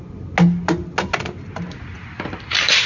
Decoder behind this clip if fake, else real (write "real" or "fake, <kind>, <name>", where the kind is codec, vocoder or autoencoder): real